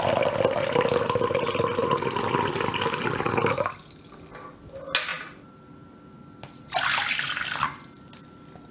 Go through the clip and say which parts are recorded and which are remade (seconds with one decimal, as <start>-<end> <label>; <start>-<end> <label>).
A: 0.0-8.7 recorded